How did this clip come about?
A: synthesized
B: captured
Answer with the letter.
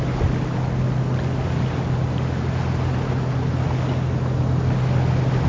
B